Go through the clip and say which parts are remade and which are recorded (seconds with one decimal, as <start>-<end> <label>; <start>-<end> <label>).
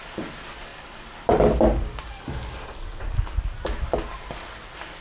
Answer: 0.0-5.0 recorded